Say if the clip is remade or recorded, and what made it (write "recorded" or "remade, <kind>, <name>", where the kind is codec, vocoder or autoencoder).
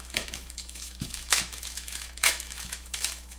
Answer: remade, autoencoder, DAC-VAE